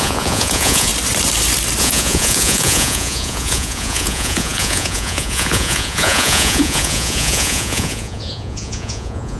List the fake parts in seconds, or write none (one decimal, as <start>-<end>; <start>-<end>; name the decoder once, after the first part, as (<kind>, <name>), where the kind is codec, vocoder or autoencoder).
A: 0.0-0.9 (vocoder, Vocos); 1.8-9.4